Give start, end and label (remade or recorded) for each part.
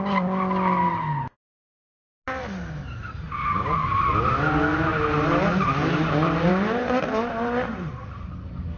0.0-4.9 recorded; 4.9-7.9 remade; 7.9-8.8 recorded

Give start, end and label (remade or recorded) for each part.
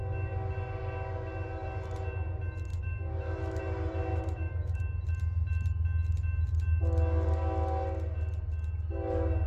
0.0-2.7 recorded; 2.7-3.6 remade; 3.6-4.1 recorded; 4.1-4.8 remade; 4.8-9.5 recorded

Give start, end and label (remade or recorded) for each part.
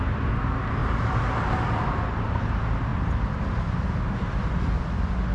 0.0-0.8 recorded; 0.8-1.4 remade; 1.4-5.3 recorded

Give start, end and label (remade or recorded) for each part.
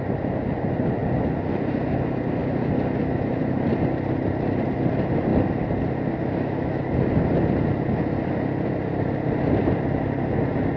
0.0-10.8 recorded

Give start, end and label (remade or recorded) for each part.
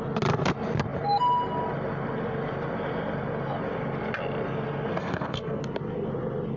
0.0-4.9 recorded; 4.9-5.6 remade; 5.6-6.6 recorded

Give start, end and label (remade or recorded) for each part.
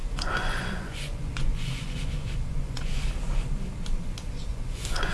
0.0-3.1 remade; 3.1-4.5 recorded; 4.5-5.1 remade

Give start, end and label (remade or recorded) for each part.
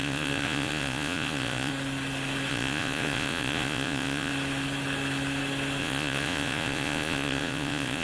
0.0-1.7 remade; 1.7-2.5 recorded; 2.5-4.3 remade; 4.3-5.8 recorded; 5.8-8.0 remade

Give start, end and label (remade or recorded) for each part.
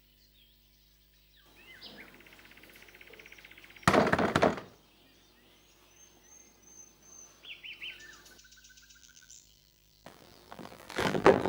0.0-9.0 recorded; 9.0-11.5 remade